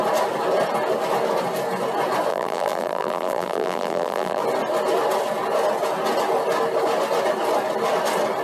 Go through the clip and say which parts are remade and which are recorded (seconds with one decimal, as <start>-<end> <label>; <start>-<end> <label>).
0.0-2.3 recorded; 2.3-4.4 remade; 4.4-8.4 recorded

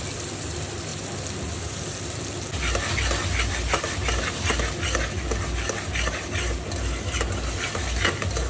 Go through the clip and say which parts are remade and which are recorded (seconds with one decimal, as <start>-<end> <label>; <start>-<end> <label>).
0.0-8.5 recorded